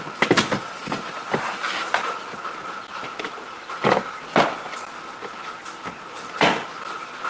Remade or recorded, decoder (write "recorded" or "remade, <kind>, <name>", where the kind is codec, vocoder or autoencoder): recorded